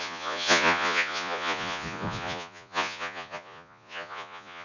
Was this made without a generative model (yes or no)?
no